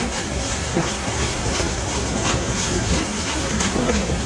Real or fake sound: fake